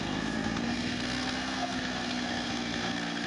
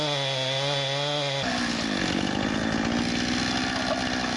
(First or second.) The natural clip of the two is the second